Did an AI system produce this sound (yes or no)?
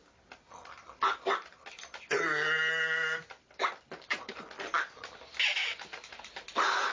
no